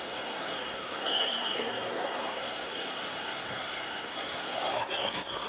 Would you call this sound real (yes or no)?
no